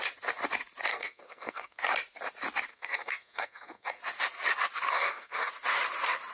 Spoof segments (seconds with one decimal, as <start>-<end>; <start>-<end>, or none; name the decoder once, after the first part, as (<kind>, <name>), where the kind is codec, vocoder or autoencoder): 0.9-1.8 (codec, SNAC); 2.7-4.0; 4.9-5.5